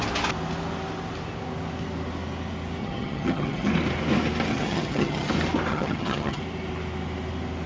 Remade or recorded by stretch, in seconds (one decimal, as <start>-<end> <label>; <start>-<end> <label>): 0.0-2.8 recorded; 2.8-3.7 remade; 3.7-4.5 recorded; 4.5-5.3 remade; 5.3-5.7 recorded; 5.7-6.4 remade; 6.4-7.7 recorded